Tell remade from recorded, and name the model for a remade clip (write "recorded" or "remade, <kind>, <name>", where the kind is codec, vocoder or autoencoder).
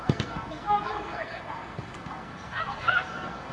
remade, codec, SNAC